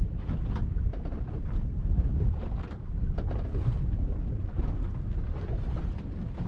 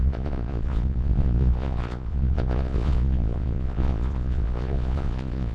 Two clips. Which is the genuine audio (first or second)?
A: first